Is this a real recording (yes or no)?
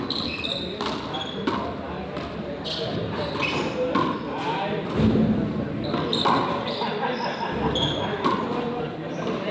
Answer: yes